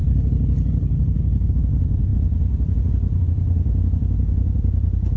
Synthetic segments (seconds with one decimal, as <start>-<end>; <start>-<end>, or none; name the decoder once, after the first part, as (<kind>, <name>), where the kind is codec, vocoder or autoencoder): 0.0-1.5 (codec, HILCodec)

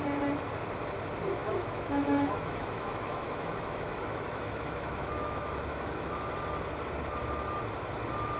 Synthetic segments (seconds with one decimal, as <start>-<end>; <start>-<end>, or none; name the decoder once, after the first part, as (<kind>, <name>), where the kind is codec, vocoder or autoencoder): 1.4-6.3 (autoencoder, DAC-VAE)

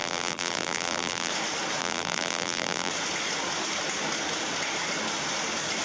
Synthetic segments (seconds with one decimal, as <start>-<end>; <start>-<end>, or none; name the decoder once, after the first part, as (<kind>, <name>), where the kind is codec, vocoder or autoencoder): 0.0-1.3 (vocoder, BigVGAN v2); 1.8-2.9